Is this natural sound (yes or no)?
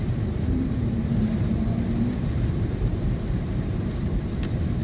no